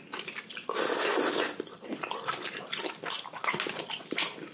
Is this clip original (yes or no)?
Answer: yes